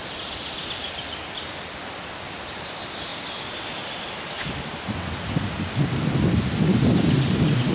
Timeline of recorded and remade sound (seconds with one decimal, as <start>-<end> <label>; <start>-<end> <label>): 0.0-3.1 remade; 3.1-6.2 recorded; 6.2-7.7 remade